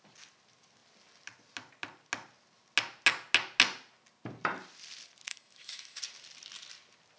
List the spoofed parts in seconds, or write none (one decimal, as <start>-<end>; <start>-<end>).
5.3-6.0